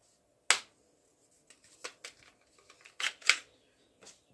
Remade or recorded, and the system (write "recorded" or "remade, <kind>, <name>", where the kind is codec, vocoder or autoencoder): recorded